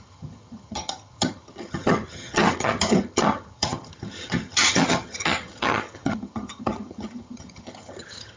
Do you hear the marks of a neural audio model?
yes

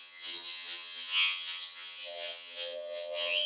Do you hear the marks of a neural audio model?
yes